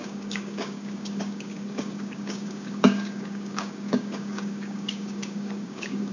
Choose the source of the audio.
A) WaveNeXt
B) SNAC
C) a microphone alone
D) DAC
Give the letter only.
D